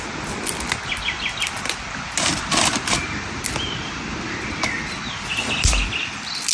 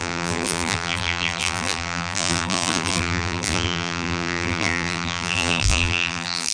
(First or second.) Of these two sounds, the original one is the first